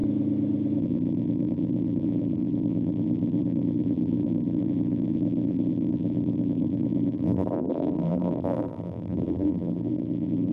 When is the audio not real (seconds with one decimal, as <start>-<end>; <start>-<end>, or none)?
0.8-10.5

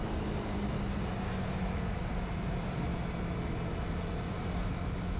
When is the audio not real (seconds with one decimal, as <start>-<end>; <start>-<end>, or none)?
0.0-1.1; 2.0-2.9; 4.1-5.2